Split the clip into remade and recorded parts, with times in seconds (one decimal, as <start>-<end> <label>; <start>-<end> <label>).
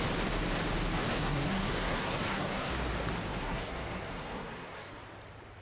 0.0-1.1 recorded; 1.1-2.7 remade; 2.7-3.4 recorded; 3.4-5.0 remade; 5.0-5.6 recorded